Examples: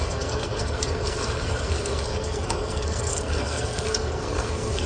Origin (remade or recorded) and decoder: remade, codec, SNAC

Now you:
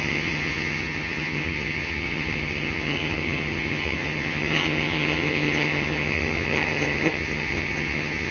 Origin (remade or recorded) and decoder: remade, vocoder, HiFi-GAN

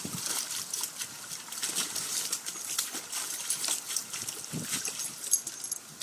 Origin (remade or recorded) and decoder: recorded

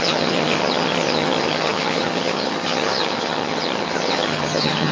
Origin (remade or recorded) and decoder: remade, vocoder, HiFi-GAN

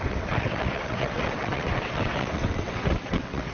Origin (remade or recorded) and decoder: remade, vocoder, WaveNeXt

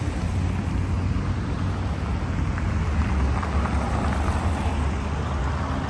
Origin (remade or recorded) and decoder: recorded